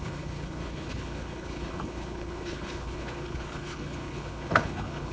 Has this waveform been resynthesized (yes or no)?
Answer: yes